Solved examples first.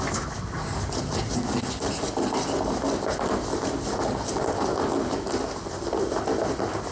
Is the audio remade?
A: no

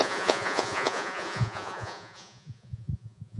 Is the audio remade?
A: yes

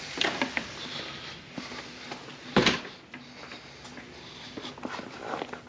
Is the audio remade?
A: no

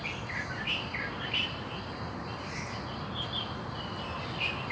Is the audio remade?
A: no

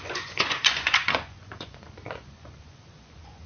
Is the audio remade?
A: yes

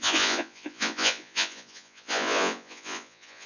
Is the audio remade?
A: yes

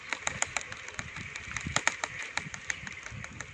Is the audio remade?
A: no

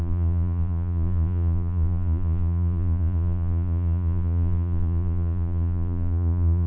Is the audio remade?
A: yes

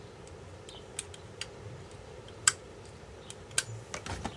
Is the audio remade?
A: no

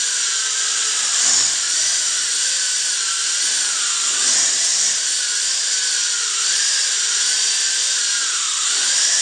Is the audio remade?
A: no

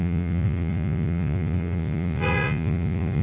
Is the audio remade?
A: yes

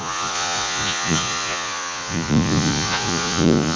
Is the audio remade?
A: yes